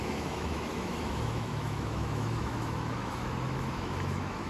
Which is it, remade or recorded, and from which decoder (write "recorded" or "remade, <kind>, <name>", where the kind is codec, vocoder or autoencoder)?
remade, autoencoder, DAC-VAE